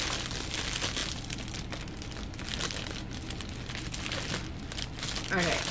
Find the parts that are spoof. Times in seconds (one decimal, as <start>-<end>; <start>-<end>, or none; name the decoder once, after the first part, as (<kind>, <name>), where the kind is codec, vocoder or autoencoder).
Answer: none